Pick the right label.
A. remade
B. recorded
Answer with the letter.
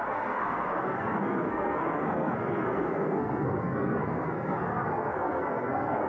A